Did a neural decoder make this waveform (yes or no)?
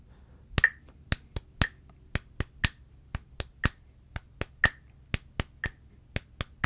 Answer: no